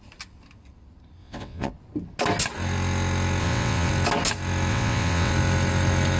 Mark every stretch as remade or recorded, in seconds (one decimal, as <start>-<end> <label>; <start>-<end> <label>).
0.0-1.2 recorded; 1.2-1.7 remade; 1.7-3.4 recorded; 3.4-3.9 remade; 3.9-4.7 recorded; 4.7-5.3 remade; 5.3-6.2 recorded